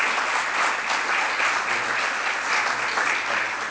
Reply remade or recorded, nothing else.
recorded